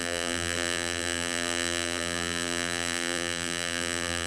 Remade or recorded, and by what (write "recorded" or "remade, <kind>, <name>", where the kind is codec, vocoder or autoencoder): remade, vocoder, BigVGAN v2